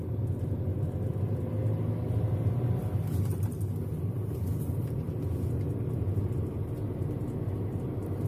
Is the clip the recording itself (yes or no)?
yes